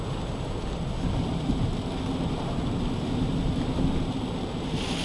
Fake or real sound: real